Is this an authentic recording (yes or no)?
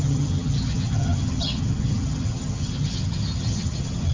no